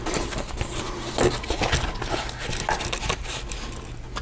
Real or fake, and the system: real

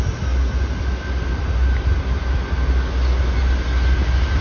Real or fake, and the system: real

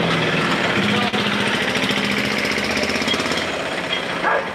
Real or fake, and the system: real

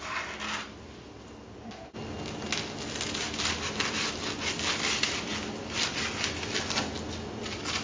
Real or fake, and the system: real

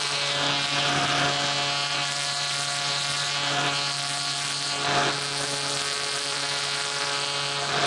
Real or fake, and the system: real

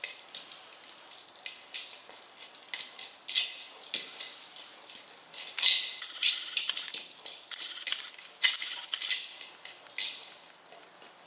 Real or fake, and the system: real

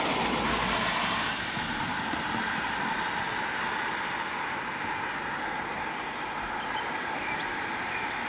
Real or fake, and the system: real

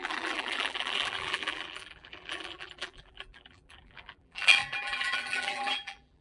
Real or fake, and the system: fake, vocoder, BigVGAN v2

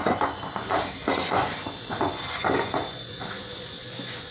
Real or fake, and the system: fake, vocoder, Vocos